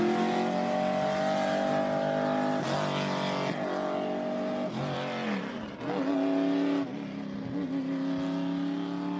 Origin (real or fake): real